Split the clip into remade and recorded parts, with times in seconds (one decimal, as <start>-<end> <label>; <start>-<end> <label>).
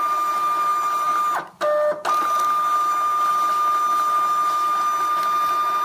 0.0-5.8 recorded